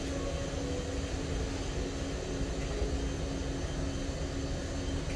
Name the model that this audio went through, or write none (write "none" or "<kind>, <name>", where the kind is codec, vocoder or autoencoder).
none